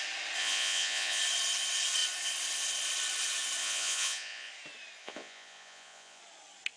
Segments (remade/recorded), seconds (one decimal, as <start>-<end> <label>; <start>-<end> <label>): 0.0-0.4 recorded; 0.4-1.2 remade; 1.2-3.6 recorded; 3.6-4.5 remade; 4.5-5.0 recorded; 5.0-6.2 remade; 6.2-6.8 recorded